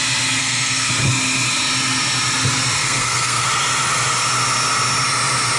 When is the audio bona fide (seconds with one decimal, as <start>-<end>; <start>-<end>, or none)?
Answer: 0.0-0.4; 0.9-2.8; 3.5-5.6